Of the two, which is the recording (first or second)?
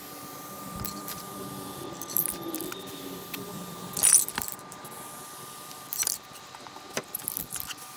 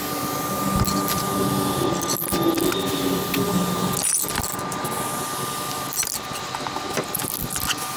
second